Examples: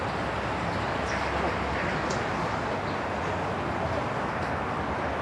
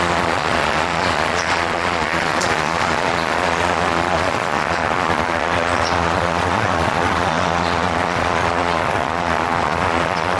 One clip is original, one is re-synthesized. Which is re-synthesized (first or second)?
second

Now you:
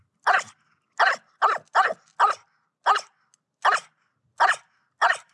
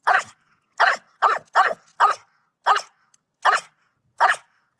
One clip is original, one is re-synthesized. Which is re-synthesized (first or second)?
second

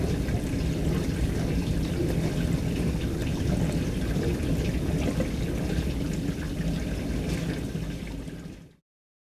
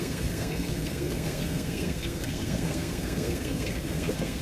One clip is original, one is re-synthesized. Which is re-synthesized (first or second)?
second